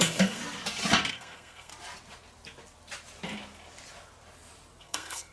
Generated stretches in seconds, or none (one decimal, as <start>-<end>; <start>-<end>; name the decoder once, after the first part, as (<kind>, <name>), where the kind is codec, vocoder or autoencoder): 0.0-0.4 (codec, SNAC); 1.1-1.7; 4.8-5.3